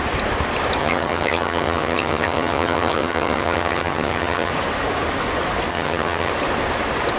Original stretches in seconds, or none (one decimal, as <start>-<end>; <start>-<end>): 0.0-0.8; 4.5-5.7; 6.3-7.2